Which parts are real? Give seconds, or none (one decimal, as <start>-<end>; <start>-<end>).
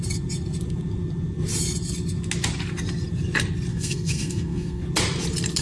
0.0-3.7; 4.8-5.6